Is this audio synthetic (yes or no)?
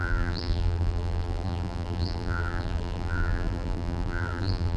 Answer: yes